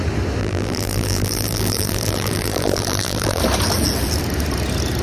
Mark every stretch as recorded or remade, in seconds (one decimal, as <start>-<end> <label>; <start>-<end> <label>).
0.0-0.4 recorded; 0.4-3.4 remade; 3.4-5.0 recorded